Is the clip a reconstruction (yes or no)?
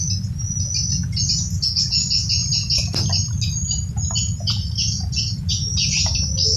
no